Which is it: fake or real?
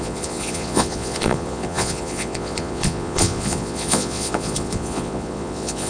fake